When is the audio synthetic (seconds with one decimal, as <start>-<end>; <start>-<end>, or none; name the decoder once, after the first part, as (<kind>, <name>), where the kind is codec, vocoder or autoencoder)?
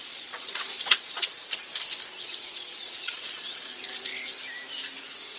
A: 0.0-1.4 (vocoder, Vocos); 2.2-4.1; 5.0-5.4